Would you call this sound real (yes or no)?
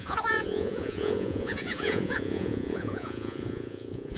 no